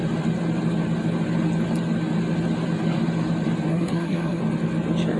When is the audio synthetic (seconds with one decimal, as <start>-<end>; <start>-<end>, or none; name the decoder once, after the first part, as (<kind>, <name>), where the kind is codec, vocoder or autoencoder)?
3.7-4.4 (codec, SNAC)